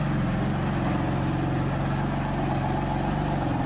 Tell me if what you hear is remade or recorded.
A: recorded